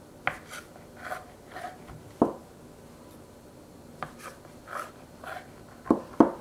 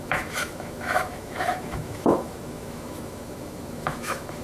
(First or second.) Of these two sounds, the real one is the first